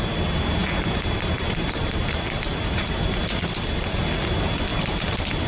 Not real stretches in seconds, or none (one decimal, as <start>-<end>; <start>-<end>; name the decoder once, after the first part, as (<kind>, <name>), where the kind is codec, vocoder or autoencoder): none